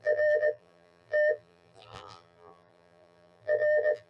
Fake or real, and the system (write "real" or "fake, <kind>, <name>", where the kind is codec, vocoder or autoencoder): fake, vocoder, BigVGAN v2